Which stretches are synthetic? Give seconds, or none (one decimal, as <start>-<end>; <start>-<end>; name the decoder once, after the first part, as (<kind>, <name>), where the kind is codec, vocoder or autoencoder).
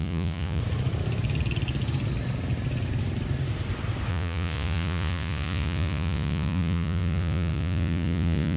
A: 0.0-0.6 (vocoder, Vocos); 4.1-8.6